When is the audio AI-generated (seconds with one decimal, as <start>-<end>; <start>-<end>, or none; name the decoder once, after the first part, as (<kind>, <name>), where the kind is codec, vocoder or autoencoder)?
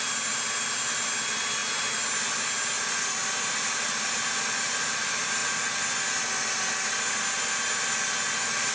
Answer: none